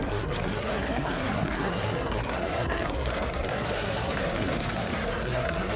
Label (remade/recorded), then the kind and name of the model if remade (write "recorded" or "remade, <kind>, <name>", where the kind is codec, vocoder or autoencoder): remade, codec, SNAC